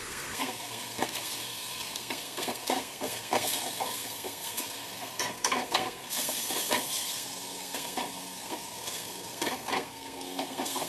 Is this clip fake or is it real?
fake